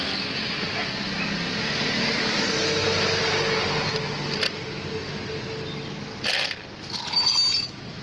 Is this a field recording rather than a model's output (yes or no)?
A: yes